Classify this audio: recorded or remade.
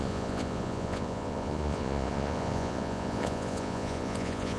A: remade